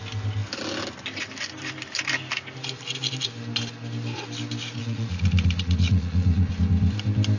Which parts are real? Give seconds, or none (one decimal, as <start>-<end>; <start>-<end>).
0.0-4.8; 6.5-7.4